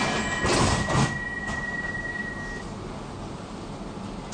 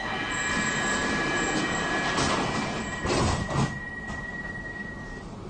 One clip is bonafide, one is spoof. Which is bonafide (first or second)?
first